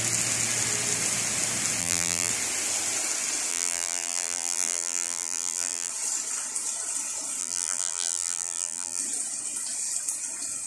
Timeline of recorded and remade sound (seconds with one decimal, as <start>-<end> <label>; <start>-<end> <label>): 0.0-1.8 recorded; 1.8-2.3 remade; 2.3-3.5 recorded; 3.5-5.9 remade; 5.9-7.4 recorded; 7.4-9.0 remade; 9.0-10.7 recorded